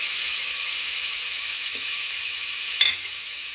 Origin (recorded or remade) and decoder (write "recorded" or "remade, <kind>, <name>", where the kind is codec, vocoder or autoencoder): remade, autoencoder, DAC-VAE